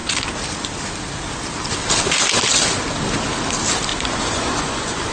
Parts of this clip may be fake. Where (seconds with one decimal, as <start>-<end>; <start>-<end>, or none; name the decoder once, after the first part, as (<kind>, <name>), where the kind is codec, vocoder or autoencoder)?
3.9-5.1 (vocoder, Vocos)